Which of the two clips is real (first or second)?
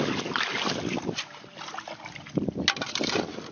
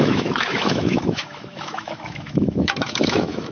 first